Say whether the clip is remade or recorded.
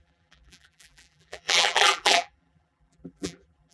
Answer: remade